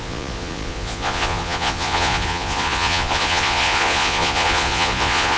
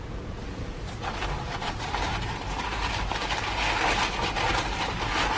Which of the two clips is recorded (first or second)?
second